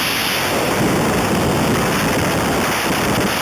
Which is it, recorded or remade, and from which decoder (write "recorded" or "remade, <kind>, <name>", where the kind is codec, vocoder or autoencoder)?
recorded